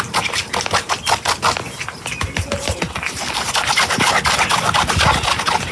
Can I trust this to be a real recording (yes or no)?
yes